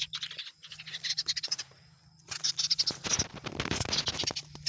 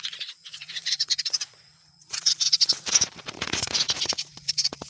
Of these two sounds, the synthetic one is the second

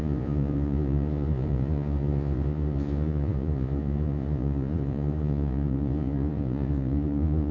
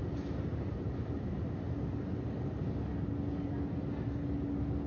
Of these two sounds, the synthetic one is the first